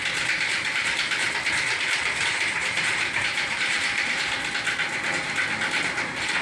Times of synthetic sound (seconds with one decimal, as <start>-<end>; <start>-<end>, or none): 2.6-4.2